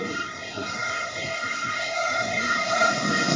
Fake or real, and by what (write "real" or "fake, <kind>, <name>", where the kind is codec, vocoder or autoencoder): fake, codec, SNAC